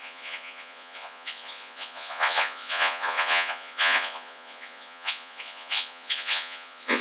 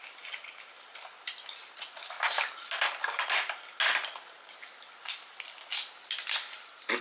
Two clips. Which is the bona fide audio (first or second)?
second